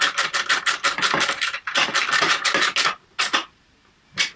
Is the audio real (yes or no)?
yes